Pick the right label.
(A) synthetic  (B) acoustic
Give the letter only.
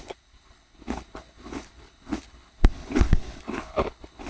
A